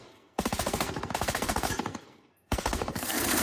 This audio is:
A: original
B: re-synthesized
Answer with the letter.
B